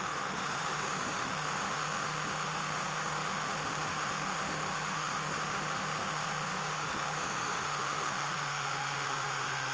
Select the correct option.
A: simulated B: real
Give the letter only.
A